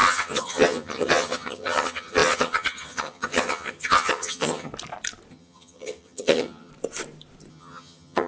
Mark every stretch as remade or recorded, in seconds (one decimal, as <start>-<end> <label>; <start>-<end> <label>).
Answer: 0.0-4.7 remade; 4.7-5.3 recorded; 5.3-6.7 remade; 6.7-7.5 recorded; 7.5-8.3 remade